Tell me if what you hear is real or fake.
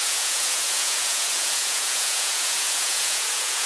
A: fake